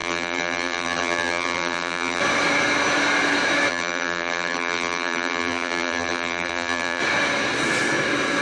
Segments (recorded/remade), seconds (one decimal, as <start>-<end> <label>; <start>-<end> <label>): 0.0-2.2 remade; 2.2-3.7 recorded; 3.7-7.0 remade; 7.0-8.4 recorded